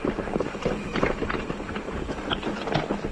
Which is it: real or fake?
real